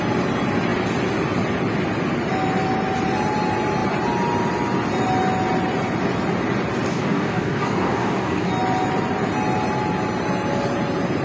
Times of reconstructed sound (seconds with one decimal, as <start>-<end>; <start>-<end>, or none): 6.9-8.5